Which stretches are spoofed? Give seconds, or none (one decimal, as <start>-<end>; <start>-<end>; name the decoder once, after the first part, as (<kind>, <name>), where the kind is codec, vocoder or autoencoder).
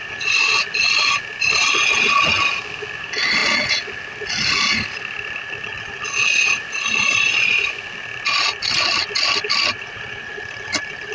none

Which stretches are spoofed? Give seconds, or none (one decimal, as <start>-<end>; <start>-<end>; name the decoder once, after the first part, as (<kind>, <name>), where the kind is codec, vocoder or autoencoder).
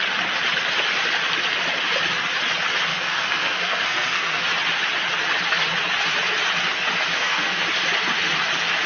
2.9-4.4 (codec, SNAC); 7.1-7.6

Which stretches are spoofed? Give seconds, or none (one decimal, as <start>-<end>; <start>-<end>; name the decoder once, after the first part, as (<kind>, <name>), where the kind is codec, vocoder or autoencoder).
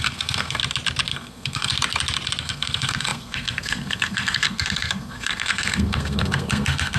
0.0-0.6 (codec, SNAC); 1.1-1.7; 2.4-7.0